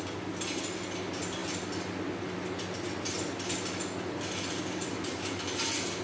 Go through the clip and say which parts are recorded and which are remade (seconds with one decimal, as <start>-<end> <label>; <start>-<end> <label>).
0.0-6.0 recorded